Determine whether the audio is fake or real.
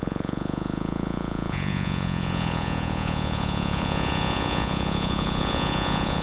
fake